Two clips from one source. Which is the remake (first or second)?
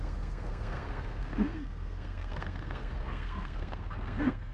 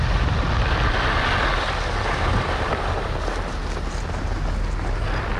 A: first